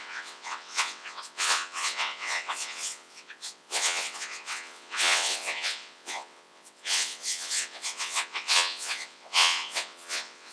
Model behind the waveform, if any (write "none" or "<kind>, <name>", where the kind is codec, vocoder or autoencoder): vocoder, WaveNeXt